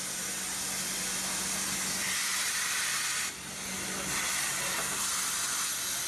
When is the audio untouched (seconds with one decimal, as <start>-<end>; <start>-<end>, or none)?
0.0-6.1